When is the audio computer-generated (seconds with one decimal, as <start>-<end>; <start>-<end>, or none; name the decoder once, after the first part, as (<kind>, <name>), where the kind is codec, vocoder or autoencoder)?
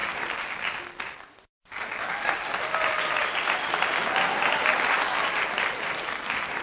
none